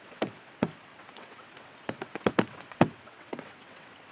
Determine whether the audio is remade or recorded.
remade